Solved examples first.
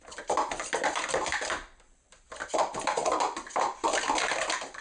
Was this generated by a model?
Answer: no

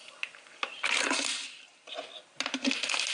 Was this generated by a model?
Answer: no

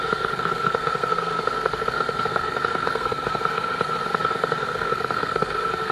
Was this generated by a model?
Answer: yes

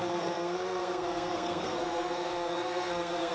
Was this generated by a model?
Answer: yes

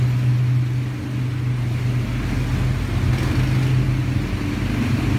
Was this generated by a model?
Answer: no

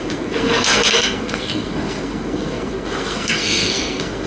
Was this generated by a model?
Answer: yes